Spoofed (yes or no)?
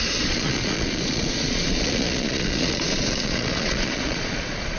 yes